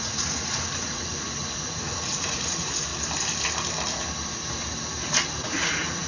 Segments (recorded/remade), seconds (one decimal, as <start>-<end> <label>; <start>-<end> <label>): 0.0-2.9 remade; 2.9-5.4 recorded; 5.4-6.1 remade